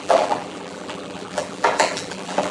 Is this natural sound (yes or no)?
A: no